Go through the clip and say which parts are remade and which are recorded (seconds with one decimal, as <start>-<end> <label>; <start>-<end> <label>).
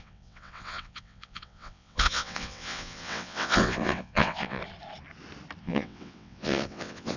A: 0.0-4.6 remade; 4.6-5.6 recorded; 5.6-7.2 remade